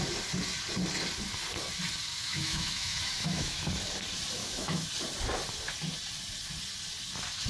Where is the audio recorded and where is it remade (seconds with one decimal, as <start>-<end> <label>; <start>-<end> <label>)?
0.0-2.1 recorded; 2.1-3.7 remade; 3.7-4.4 recorded; 4.4-4.9 remade; 4.9-7.5 recorded